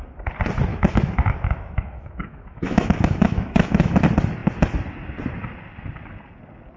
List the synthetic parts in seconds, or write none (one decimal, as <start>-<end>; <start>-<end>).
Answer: 0.7-4.0